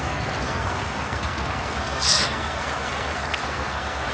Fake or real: fake